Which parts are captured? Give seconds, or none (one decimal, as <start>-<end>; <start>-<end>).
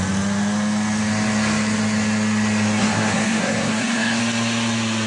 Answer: 0.0-2.8; 4.2-5.1